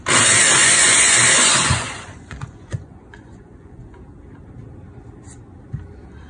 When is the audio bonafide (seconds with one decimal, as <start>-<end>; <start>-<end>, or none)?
0.0-0.6; 4.0-6.3